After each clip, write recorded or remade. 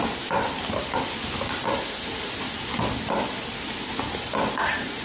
recorded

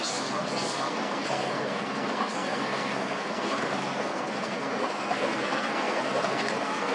remade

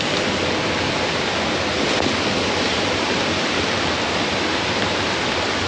recorded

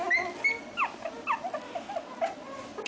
recorded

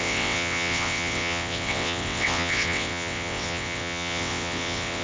remade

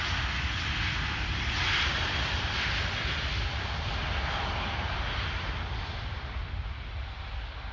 recorded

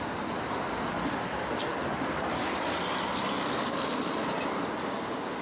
recorded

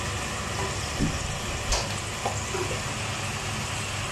recorded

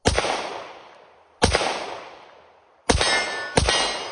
recorded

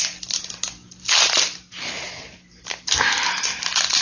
recorded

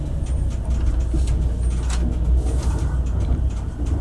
recorded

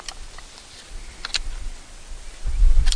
recorded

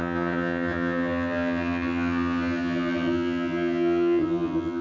remade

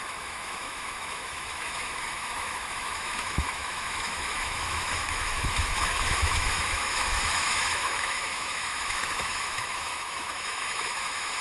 remade